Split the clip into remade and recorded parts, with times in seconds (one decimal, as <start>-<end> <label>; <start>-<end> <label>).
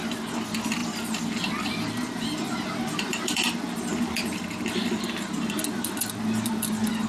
0.0-0.8 recorded; 0.8-5.0 remade; 5.0-7.1 recorded